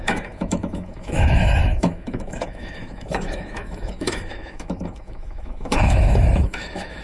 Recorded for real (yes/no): no